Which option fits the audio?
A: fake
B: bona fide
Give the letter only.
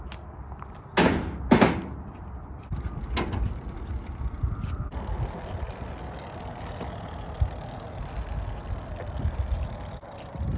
B